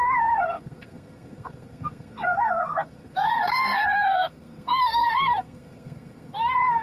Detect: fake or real fake